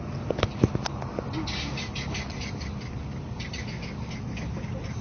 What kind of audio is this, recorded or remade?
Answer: recorded